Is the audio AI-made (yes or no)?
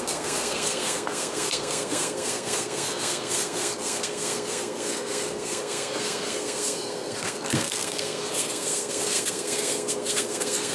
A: yes